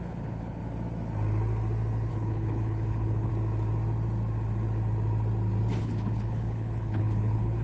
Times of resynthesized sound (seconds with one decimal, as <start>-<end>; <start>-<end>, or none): 0.0-0.6; 2.1-3.3; 5.8-7.6